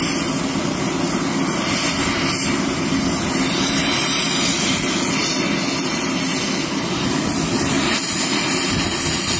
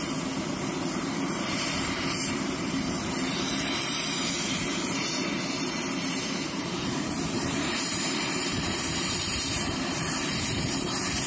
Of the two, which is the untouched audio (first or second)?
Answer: first